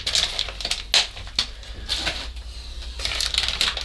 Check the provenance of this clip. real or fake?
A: real